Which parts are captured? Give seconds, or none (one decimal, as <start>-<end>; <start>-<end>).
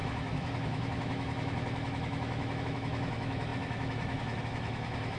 none